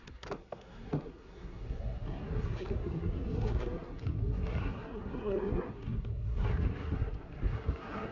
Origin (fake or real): fake